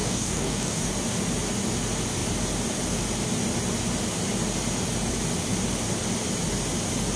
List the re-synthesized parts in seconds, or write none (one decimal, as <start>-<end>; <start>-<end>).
0.0-0.9